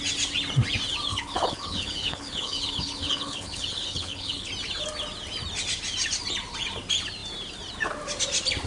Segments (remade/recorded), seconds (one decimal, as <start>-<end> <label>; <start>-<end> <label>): 0.0-1.1 recorded; 1.1-4.5 remade; 4.5-8.7 recorded